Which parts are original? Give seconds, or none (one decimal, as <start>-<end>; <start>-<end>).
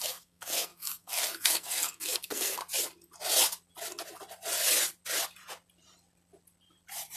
2.6-7.2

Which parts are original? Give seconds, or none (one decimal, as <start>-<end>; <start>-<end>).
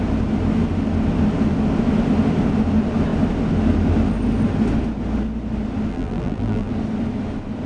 0.0-5.9; 6.7-7.7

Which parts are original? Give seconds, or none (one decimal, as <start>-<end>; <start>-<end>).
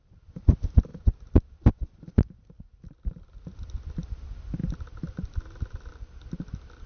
0.0-4.6; 6.2-6.9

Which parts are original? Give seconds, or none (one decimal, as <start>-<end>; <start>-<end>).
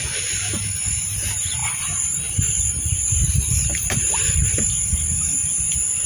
0.0-6.1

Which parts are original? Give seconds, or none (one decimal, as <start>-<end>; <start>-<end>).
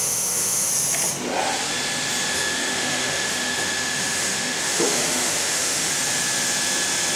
0.7-2.3; 5.9-7.2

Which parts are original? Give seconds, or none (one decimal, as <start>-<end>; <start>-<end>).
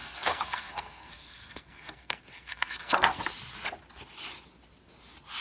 3.2-5.4